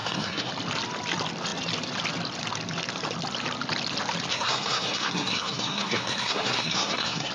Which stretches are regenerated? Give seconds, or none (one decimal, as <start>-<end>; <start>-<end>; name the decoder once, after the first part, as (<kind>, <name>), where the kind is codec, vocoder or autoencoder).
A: 0.0-0.5 (codec, SNAC); 4.3-7.3